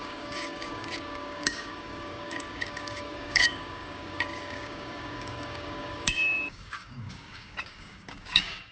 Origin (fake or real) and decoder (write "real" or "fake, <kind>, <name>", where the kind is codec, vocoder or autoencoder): fake, codec, DAC